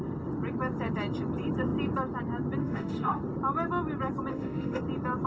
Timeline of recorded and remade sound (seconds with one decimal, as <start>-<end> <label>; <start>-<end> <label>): 0.0-2.6 recorded; 2.6-3.2 remade; 3.2-4.3 recorded; 4.3-4.8 remade; 4.8-5.3 recorded